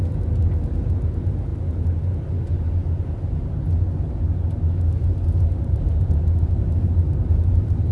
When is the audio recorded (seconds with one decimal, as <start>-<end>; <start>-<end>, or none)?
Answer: 0.0-7.9